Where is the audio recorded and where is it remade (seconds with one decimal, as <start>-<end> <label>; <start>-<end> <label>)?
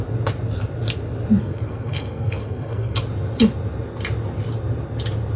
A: 0.0-1.4 recorded; 1.4-3.0 remade; 3.0-5.4 recorded